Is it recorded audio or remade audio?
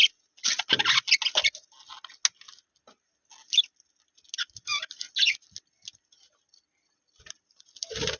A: recorded